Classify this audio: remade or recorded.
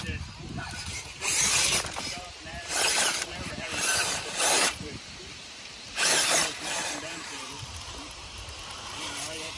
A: remade